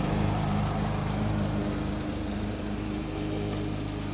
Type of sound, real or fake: fake